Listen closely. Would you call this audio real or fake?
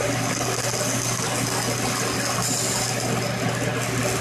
real